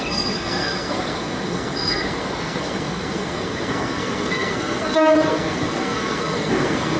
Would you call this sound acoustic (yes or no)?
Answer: no